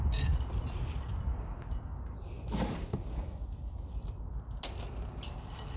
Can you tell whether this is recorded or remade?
recorded